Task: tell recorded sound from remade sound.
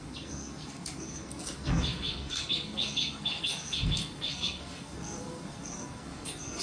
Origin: remade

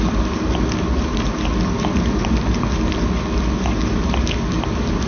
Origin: recorded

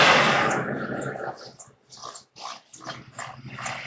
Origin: recorded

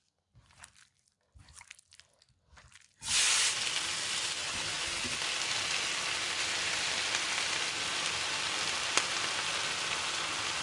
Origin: recorded